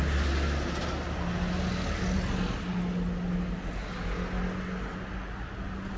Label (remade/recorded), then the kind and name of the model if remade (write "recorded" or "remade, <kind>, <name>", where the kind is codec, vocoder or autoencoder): recorded